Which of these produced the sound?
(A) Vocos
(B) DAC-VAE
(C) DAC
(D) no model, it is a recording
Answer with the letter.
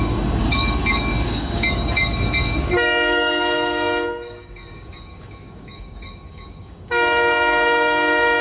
C